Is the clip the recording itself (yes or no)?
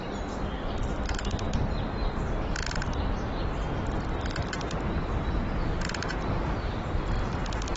no